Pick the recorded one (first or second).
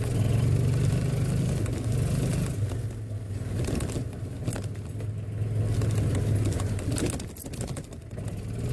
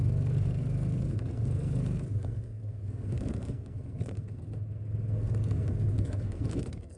first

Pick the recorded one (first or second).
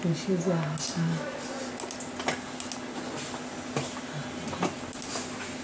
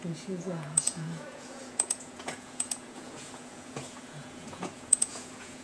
first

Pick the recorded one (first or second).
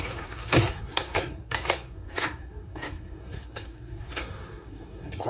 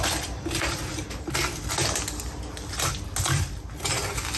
second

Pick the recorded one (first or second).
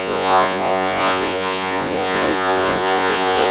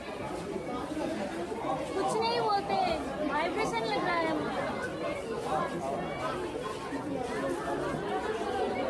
second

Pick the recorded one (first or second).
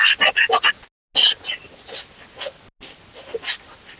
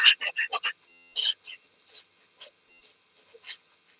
first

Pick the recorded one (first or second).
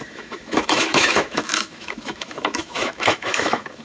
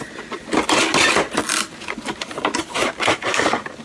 second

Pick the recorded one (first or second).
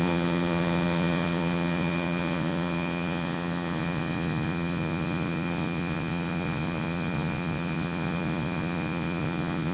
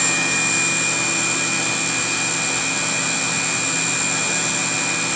second